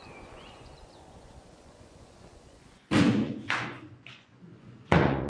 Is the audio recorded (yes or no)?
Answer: no